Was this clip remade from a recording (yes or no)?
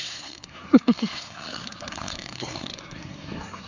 yes